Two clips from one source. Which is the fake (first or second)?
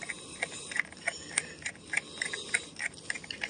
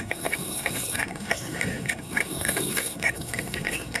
second